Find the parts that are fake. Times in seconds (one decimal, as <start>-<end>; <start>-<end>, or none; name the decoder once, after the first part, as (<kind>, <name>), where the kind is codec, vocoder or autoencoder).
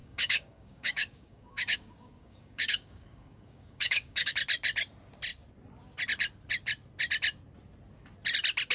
0.0-4.3 (codec, DAC)